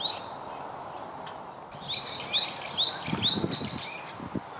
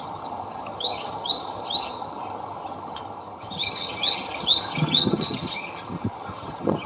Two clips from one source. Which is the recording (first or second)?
first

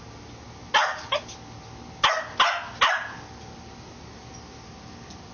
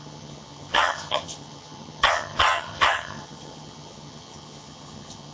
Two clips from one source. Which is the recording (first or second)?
first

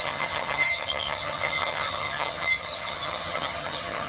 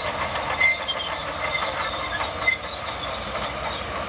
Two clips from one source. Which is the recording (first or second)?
second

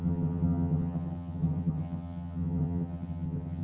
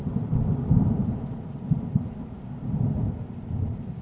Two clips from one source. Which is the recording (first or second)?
second